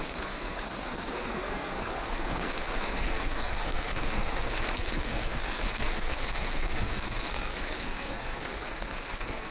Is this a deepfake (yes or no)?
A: yes